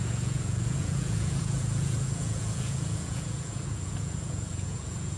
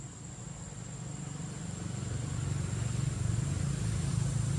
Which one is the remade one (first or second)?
first